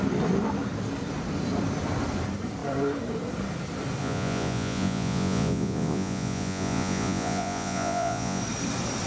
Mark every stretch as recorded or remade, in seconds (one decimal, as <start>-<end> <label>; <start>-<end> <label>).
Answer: 0.0-4.0 recorded; 4.0-8.4 remade; 8.4-9.1 recorded